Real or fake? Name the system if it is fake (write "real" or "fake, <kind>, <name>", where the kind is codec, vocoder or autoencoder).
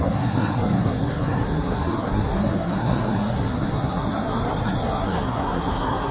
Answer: fake, codec, SNAC